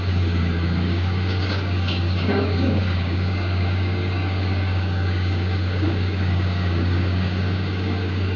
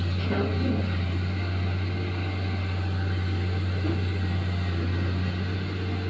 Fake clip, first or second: first